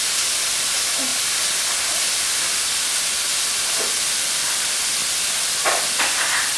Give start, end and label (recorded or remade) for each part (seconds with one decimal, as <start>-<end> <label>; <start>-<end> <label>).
0.0-5.0 recorded; 5.0-5.6 remade; 5.6-6.6 recorded